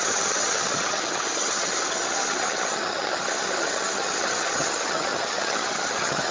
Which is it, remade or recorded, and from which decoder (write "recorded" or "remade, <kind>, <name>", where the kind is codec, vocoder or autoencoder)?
remade, vocoder, HiFi-GAN